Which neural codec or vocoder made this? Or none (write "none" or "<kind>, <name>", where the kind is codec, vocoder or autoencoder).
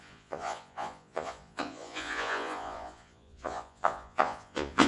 vocoder, Vocos